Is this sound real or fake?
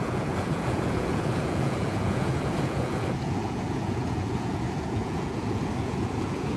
fake